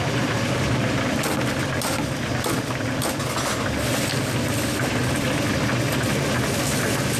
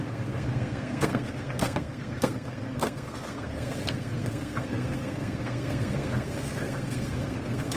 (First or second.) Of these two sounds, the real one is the first